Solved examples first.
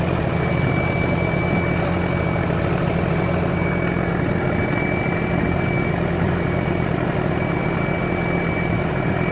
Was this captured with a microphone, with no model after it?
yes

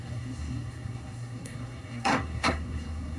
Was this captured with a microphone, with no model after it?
no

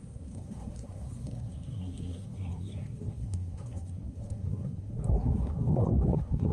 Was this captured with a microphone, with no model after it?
no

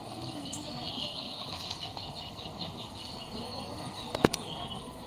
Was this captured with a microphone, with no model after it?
no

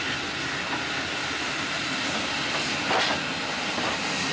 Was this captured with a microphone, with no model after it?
yes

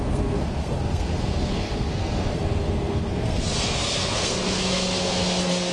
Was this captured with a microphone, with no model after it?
no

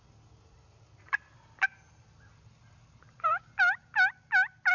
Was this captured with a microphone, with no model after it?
yes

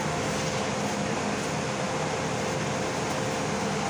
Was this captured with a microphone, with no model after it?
yes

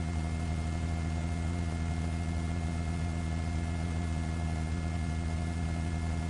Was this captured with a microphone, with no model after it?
yes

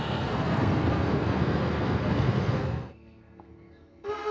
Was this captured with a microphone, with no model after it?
no